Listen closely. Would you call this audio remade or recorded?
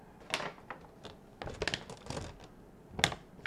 recorded